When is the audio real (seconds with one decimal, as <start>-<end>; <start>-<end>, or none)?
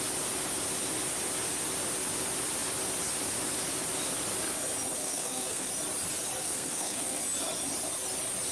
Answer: 0.0-5.0; 5.7-6.4; 7.2-8.5